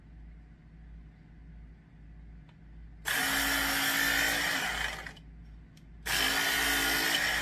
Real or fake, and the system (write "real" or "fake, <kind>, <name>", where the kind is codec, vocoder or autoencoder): real